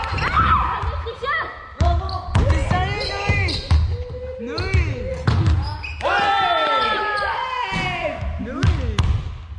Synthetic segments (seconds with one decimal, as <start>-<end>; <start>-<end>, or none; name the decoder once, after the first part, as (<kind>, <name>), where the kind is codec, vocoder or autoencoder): none